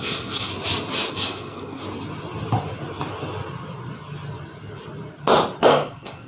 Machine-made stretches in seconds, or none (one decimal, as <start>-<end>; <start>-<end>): 0.0-0.5; 1.1-1.8; 5.6-6.3